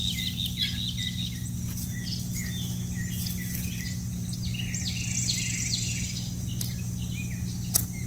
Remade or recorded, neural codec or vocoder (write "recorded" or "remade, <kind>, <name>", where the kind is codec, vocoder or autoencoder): recorded